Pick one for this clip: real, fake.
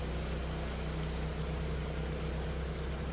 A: real